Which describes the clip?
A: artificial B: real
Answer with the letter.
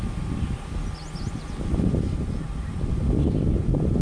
B